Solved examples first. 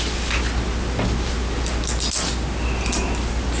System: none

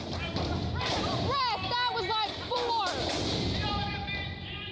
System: none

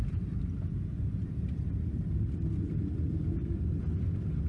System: none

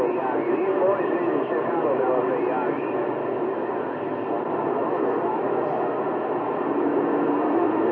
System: none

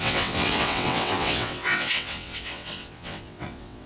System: vocoder, WaveNeXt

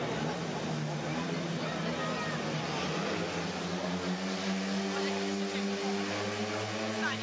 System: none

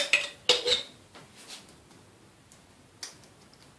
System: none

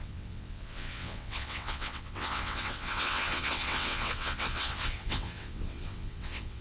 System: vocoder, WaveNeXt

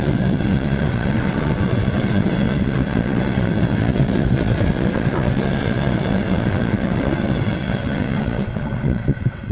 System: vocoder, WaveNeXt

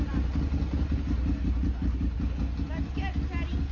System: none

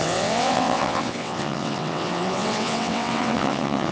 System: vocoder, WaveNeXt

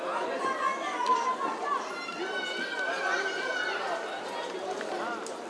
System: none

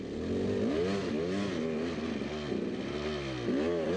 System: none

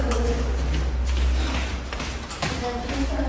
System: none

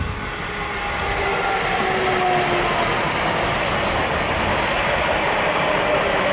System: none